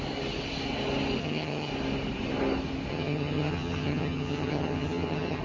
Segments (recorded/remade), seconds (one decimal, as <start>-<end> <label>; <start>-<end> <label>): 0.0-1.2 recorded; 1.2-1.7 remade; 1.7-2.9 recorded; 2.9-5.4 remade